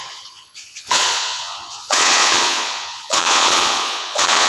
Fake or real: fake